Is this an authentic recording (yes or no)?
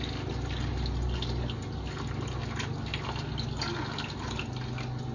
yes